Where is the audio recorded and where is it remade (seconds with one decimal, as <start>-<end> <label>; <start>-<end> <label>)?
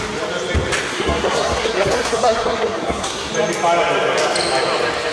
0.0-0.9 recorded; 0.9-3.3 remade; 3.3-5.1 recorded